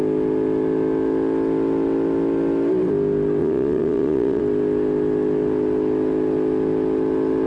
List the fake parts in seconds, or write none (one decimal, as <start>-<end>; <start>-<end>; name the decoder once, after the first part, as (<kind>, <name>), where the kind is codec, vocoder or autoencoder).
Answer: 3.4-4.4 (vocoder, Vocos)